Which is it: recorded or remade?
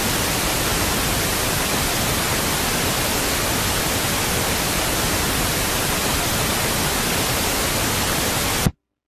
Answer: recorded